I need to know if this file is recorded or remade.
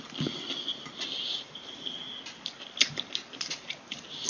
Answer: recorded